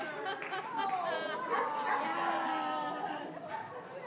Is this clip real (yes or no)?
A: yes